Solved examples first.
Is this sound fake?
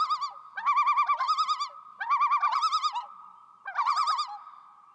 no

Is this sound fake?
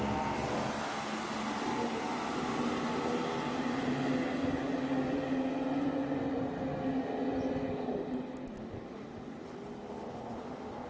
no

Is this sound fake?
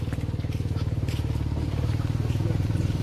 yes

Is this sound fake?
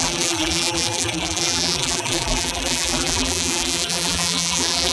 yes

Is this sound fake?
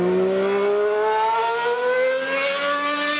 no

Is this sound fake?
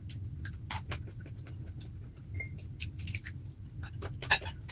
no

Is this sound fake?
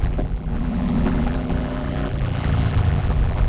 yes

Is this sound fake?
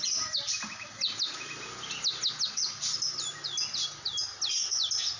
no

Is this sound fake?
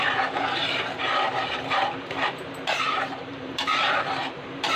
yes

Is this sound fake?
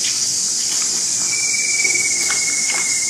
yes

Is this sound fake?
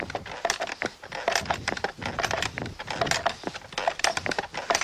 no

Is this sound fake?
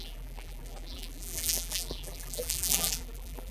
yes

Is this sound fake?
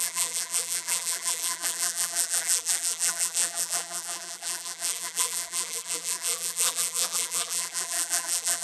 yes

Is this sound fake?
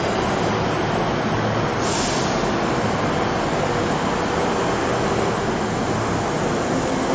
no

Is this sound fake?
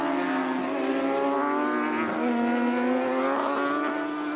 no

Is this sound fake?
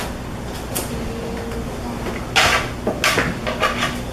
no